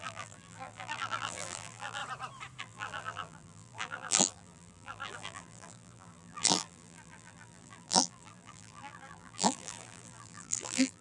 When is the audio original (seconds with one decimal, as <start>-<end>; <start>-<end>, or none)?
2.0-2.6